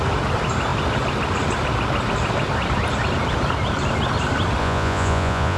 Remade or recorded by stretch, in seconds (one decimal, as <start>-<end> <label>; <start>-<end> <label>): 0.0-4.6 recorded; 4.6-5.6 remade